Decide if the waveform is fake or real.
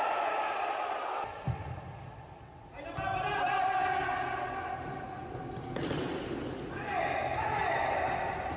real